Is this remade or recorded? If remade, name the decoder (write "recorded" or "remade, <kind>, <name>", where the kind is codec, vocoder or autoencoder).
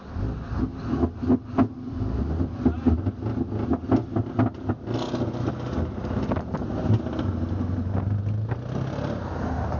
recorded